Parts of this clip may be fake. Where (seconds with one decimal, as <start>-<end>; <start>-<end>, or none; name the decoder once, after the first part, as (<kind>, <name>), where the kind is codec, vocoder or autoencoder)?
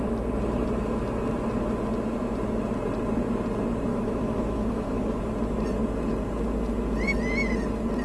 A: 3.9-5.2 (autoencoder, DAC-VAE)